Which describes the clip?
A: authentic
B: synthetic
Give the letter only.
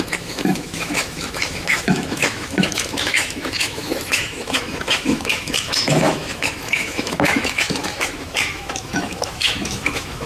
B